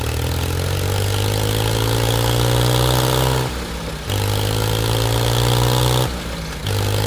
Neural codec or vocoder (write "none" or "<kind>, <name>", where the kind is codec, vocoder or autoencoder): none